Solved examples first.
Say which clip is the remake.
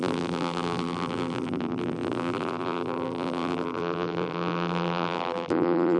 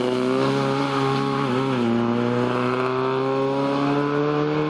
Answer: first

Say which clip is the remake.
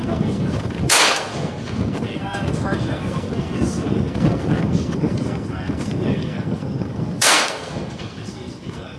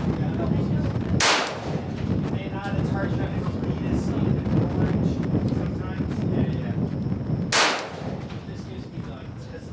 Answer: first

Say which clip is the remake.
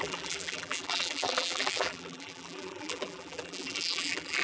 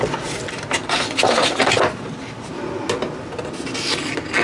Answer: first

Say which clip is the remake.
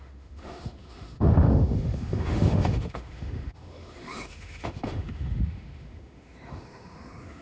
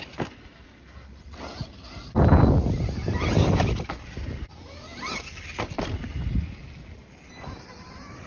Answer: first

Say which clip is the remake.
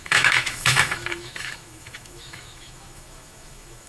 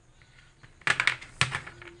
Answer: first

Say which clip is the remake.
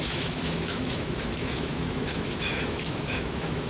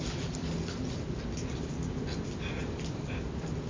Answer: first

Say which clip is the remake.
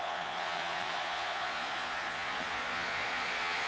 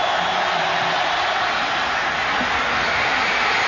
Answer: first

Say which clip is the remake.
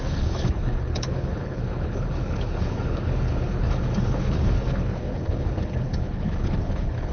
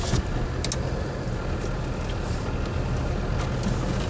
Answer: first